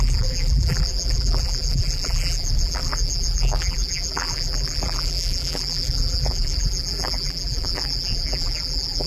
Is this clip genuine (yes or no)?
no